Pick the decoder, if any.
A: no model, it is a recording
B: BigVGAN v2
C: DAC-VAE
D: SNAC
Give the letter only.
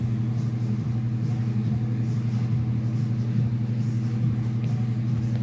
A